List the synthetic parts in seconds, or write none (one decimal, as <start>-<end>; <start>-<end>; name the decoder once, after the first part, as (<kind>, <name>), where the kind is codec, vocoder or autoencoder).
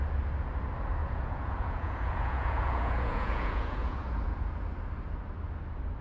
1.0-4.5 (vocoder, Vocos)